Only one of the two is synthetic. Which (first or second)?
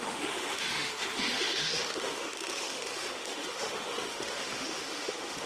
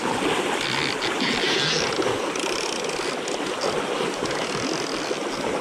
first